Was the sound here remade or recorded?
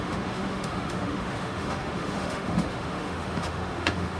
remade